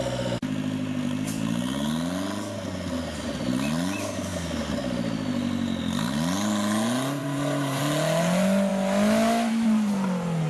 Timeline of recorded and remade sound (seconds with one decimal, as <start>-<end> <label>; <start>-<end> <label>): 0.0-7.2 recorded; 7.2-7.8 remade; 7.8-10.5 recorded